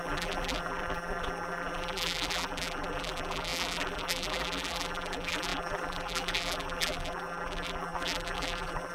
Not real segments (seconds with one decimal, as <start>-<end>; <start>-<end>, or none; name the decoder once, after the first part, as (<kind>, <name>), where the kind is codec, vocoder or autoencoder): 0.0-8.9 (vocoder, BigVGAN v2)